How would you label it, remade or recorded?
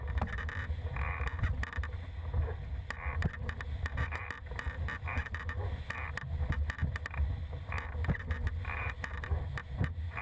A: recorded